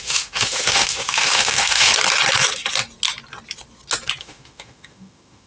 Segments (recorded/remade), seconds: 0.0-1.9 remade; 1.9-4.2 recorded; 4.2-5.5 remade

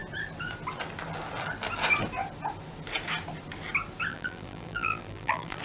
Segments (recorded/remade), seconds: 0.0-4.1 recorded; 4.1-5.6 remade

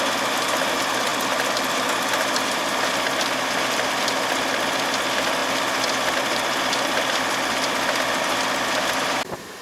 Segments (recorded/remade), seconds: 0.0-9.6 recorded

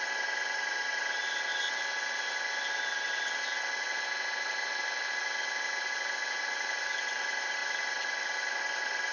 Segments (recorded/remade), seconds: 0.0-1.5 remade; 1.5-5.9 recorded; 5.9-9.1 remade

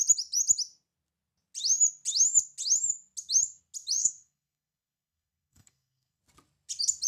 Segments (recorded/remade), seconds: 0.0-4.0 recorded; 4.0-6.2 remade; 6.2-7.1 recorded

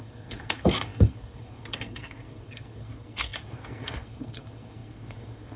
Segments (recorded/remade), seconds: 0.0-5.6 remade

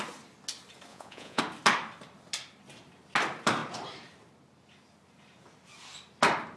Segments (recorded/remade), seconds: 0.0-0.9 recorded; 0.9-1.4 remade; 1.4-6.6 recorded

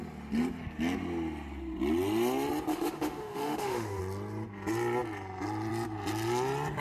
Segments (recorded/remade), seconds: 0.0-2.7 recorded; 2.7-4.0 remade; 4.0-6.8 recorded